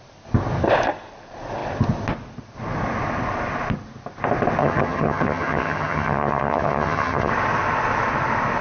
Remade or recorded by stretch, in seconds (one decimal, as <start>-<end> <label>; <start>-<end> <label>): 0.0-4.6 recorded; 4.6-7.3 remade; 7.3-8.6 recorded